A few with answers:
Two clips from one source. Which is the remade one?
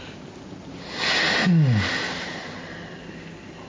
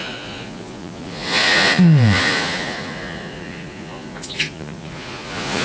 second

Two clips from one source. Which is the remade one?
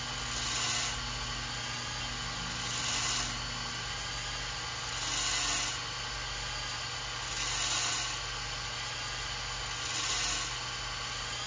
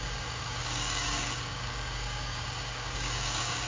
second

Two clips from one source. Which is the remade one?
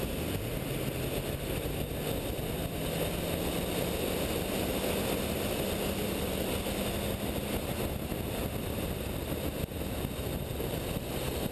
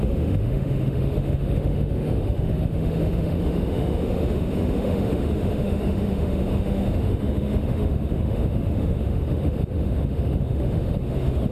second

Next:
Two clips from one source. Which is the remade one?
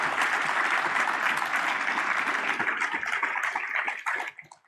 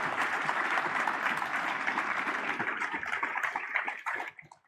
second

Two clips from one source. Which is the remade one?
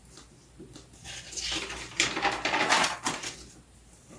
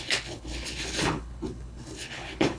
second